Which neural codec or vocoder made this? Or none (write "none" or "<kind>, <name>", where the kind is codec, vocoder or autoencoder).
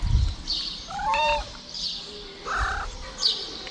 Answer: none